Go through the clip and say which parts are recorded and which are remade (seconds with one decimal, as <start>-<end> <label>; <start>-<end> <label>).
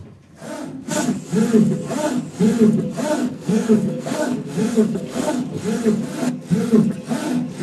0.0-3.2 recorded; 3.2-5.3 remade; 5.3-7.6 recorded